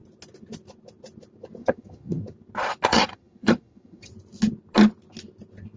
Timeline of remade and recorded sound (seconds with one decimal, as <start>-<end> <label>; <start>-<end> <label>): 0.0-1.6 recorded; 1.6-2.2 remade; 2.2-2.9 recorded; 2.9-4.1 remade; 4.1-5.8 recorded